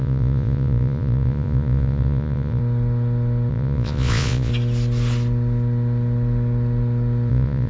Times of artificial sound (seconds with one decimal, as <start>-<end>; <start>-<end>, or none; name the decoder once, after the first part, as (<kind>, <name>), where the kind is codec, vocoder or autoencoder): 0.0-2.6 (vocoder, Vocos); 3.5-4.5; 7.3-7.7